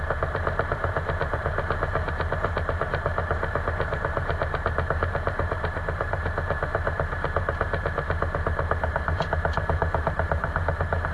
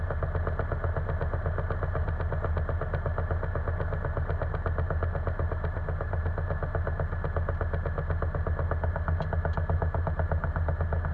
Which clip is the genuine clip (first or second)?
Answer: second